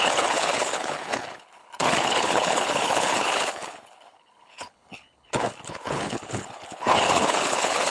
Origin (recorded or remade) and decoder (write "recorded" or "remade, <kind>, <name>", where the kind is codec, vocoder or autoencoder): remade, codec, HILCodec